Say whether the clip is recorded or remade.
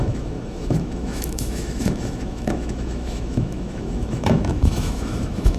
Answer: remade